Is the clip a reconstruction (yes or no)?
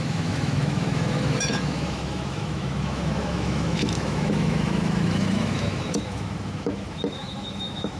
yes